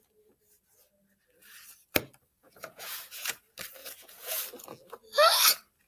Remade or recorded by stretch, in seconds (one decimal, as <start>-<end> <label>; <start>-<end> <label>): 0.0-2.4 recorded; 2.4-3.4 remade; 3.4-3.8 recorded; 3.8-4.4 remade; 4.4-5.9 recorded